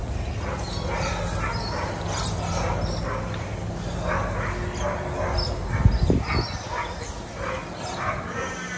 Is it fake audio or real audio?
real